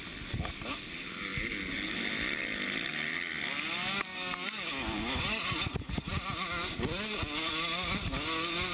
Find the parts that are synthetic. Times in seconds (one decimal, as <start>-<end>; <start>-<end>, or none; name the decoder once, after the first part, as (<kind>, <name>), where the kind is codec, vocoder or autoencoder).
4.1-5.2 (codec, DAC)